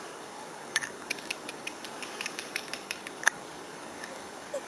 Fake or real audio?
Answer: fake